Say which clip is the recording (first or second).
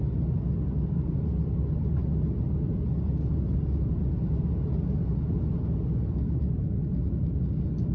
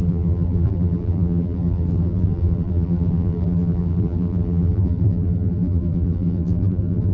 first